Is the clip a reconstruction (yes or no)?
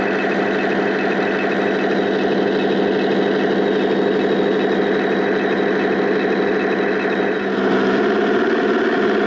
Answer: no